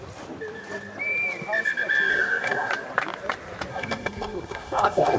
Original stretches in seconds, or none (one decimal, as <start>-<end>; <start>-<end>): 0.0-2.1; 2.7-3.7